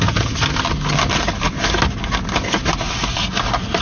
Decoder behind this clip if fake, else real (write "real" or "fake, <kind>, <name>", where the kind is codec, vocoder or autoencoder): real